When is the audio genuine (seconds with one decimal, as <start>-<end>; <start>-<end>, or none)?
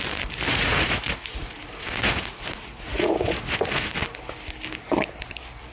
0.0-0.5; 3.9-5.7